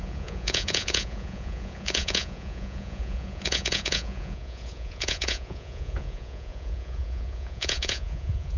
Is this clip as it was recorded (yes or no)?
no